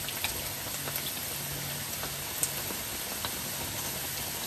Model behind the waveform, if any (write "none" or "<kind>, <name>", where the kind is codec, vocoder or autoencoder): none